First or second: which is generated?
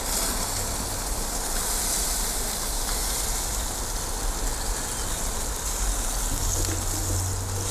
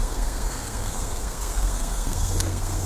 second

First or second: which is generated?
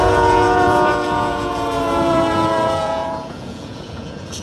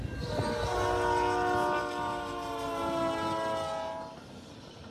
first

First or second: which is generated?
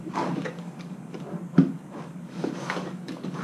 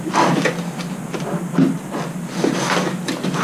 first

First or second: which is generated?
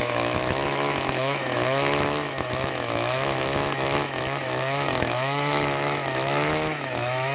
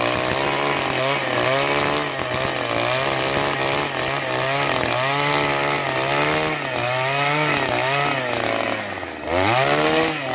first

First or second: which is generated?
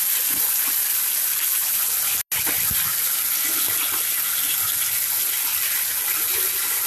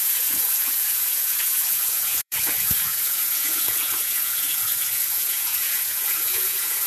second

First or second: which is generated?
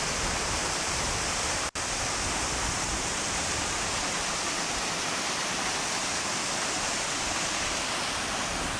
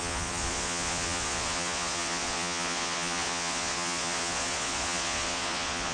second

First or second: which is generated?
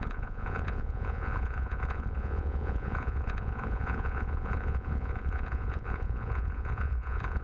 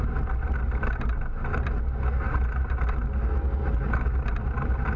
first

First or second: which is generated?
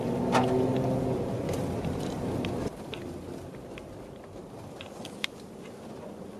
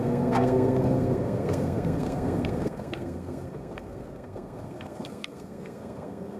second